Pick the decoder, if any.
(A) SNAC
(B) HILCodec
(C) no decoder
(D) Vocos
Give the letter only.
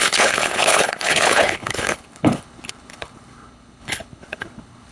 B